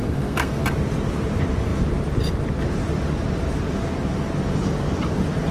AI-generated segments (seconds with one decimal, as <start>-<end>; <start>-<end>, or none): 0.0-0.6

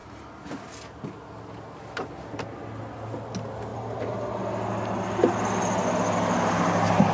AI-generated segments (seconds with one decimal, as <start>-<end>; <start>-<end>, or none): 3.7-4.4

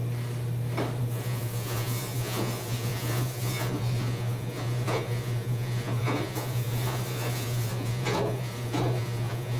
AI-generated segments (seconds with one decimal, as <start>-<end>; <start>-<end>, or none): 1.0-9.6

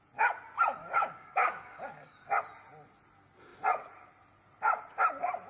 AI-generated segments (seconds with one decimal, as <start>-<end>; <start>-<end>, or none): 0.8-2.4

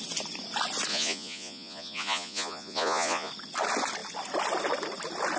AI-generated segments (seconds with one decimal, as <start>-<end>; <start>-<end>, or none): 0.9-3.3

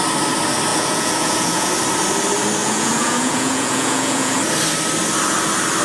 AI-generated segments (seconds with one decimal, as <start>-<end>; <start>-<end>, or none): 0.7-1.7; 2.6-4.3

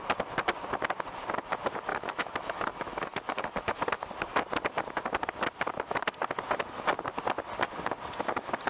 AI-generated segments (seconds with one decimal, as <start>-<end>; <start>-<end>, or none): 1.9-3.8

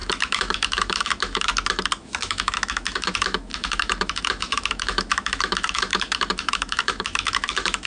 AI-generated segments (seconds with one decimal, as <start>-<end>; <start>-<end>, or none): 0.0-1.5; 2.0-7.9